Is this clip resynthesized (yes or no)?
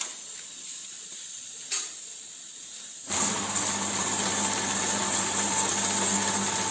no